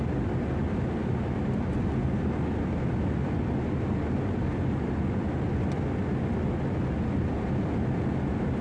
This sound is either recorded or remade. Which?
recorded